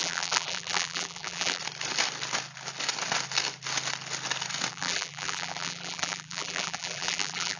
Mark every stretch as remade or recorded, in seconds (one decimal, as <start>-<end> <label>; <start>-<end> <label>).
0.0-1.6 remade; 1.6-4.7 recorded; 4.7-7.6 remade